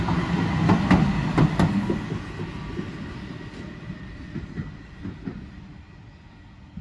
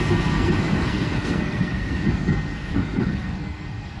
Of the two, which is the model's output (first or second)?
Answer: second